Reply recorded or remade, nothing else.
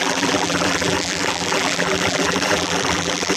remade